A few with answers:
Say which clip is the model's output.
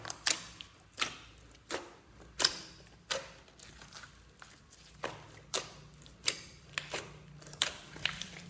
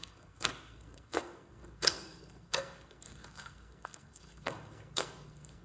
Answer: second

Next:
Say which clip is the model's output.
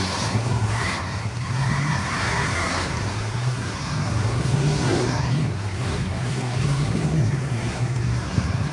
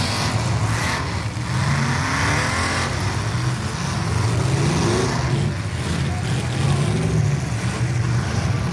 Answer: first